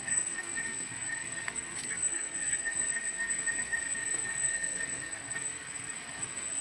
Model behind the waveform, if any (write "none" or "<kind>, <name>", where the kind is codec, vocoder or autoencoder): codec, SNAC